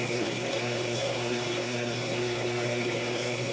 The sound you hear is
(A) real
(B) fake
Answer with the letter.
B